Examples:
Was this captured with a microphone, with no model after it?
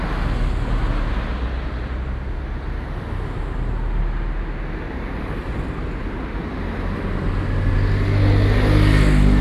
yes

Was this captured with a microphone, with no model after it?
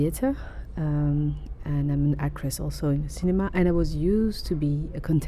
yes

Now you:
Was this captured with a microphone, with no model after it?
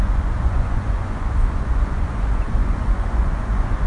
no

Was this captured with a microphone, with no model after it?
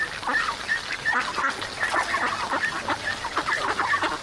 yes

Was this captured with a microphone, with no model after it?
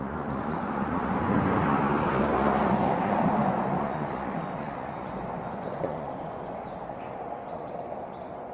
no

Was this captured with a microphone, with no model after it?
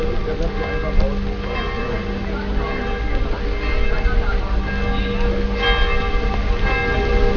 yes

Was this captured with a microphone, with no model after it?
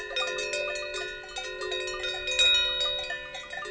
yes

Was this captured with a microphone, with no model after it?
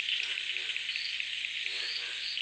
yes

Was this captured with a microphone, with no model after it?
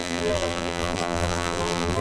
no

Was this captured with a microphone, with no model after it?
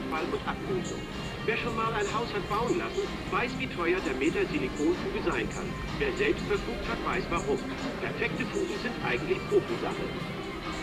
no